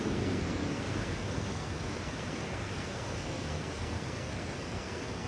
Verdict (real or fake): fake